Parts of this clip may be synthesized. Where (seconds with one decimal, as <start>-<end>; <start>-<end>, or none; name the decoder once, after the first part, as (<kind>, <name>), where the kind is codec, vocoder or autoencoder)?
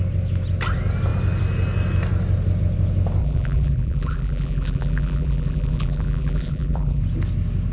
3.2-7.0 (vocoder, BigVGAN v2)